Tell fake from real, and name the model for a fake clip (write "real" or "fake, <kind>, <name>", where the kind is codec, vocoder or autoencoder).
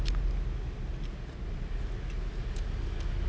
real